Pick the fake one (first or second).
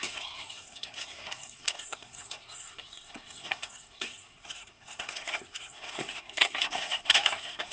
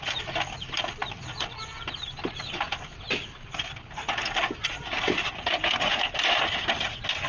first